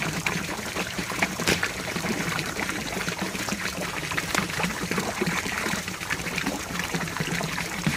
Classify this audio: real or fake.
fake